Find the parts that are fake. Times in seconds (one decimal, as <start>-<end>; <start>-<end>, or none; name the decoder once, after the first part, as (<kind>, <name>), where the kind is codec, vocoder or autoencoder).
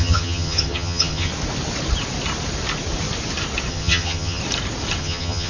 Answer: 0.0-1.3 (vocoder, HiFi-GAN); 3.7-4.4; 5.0-5.5